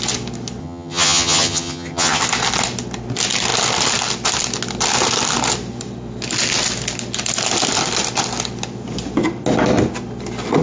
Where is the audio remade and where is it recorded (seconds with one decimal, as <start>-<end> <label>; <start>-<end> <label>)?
0.0-0.6 recorded; 0.6-2.2 remade; 2.2-10.6 recorded